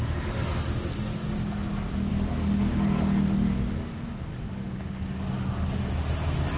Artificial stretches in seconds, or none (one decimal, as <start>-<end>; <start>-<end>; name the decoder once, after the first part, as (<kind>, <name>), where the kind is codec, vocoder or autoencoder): 4.3-5.8 (codec, DAC)